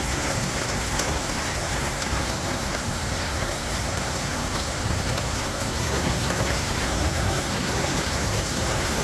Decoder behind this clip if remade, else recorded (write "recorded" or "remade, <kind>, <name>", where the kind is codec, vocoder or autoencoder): remade, codec, SNAC